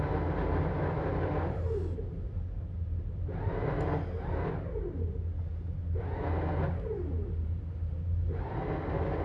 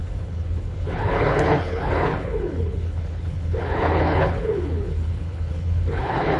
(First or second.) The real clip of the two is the first